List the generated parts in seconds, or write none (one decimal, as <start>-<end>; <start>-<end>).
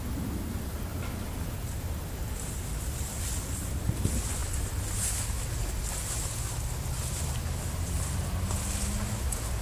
0.9-1.6